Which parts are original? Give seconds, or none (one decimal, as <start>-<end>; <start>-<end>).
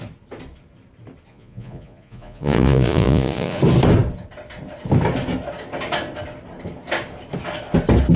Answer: 0.0-1.3; 3.6-8.2